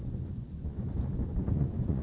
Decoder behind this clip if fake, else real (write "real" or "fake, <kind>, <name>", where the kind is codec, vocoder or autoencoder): fake, vocoder, Vocos